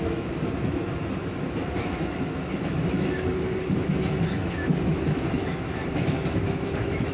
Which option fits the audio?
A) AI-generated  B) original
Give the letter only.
A